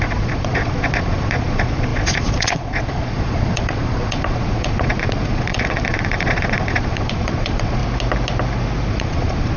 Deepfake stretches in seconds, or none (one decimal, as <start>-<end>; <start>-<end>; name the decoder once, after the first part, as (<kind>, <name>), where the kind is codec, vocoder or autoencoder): 0.0-7.8 (vocoder, Vocos); 8.9-9.6